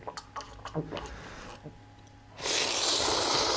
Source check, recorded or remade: recorded